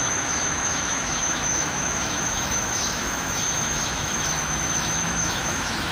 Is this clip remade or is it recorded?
remade